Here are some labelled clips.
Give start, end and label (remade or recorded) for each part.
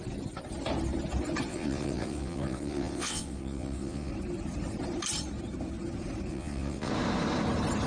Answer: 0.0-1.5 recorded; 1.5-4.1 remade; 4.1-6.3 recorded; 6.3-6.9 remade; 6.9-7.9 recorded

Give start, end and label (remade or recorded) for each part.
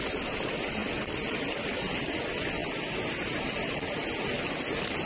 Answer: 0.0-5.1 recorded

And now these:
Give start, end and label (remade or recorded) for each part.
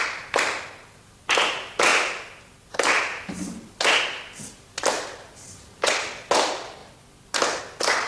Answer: 0.0-8.1 recorded